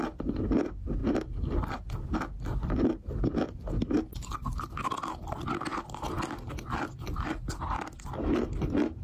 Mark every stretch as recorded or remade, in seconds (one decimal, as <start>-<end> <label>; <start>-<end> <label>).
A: 0.0-9.0 recorded